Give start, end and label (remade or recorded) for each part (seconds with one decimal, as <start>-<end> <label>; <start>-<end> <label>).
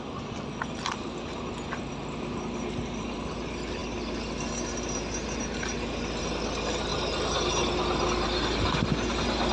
0.0-9.5 recorded